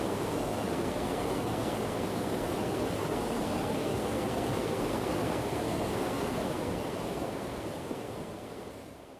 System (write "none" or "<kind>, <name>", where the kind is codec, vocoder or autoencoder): codec, SNAC